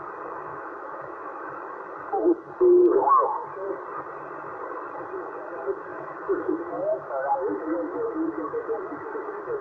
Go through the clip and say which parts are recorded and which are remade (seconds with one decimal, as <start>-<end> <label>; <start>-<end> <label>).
0.0-0.5 recorded; 0.5-1.5 remade; 1.5-5.9 recorded; 5.9-6.5 remade; 6.5-6.9 recorded; 6.9-8.6 remade; 8.6-9.6 recorded